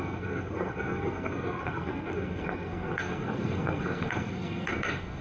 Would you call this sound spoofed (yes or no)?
yes